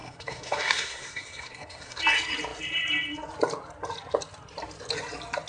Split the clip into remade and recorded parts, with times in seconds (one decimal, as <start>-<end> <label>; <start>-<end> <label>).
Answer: 0.0-2.0 remade; 2.0-5.5 recorded